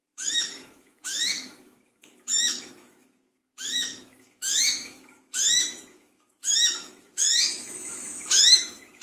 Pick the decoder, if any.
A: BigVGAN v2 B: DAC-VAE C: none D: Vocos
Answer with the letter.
B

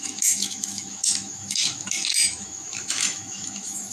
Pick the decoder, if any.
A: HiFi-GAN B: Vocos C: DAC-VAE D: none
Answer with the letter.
C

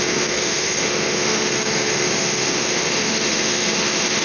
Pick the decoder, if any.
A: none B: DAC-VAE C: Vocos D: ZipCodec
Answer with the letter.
B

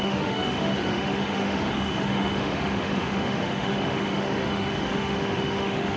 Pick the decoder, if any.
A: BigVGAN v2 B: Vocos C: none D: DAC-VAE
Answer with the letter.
D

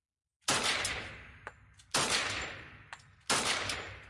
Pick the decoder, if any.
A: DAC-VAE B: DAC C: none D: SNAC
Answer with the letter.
C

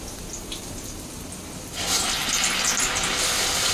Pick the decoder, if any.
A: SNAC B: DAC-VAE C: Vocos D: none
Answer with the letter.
D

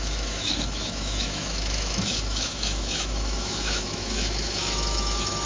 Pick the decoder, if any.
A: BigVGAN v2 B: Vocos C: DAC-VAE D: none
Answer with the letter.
C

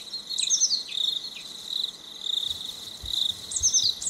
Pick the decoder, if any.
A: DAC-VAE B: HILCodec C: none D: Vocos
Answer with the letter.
C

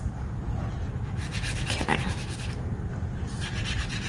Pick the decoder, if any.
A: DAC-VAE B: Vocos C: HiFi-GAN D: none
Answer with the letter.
D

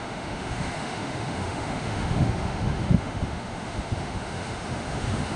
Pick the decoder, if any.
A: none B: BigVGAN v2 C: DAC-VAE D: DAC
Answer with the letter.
C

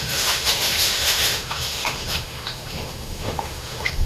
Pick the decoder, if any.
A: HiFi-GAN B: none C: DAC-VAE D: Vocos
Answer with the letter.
C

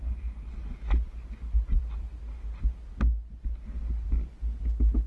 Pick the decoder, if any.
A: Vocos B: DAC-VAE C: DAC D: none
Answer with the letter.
D